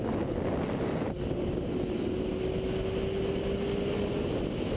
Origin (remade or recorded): recorded